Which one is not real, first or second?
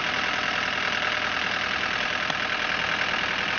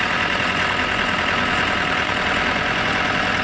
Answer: second